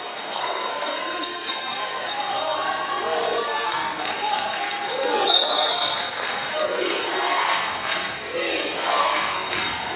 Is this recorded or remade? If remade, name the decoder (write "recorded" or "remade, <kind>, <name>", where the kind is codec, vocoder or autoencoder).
remade, codec, SNAC